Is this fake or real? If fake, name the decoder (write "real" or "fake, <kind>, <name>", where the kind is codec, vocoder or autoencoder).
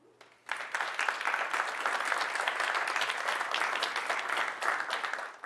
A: real